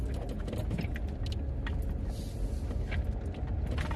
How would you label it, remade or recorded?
recorded